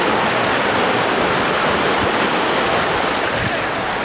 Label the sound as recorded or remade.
recorded